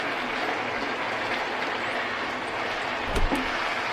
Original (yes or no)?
no